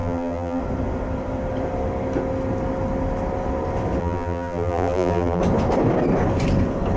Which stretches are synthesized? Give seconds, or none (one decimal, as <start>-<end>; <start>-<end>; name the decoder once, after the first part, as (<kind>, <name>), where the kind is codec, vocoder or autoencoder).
0.0-0.6 (vocoder, BigVGAN v2); 4.0-5.4